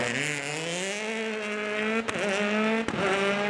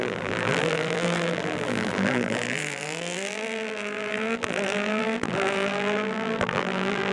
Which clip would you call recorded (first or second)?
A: first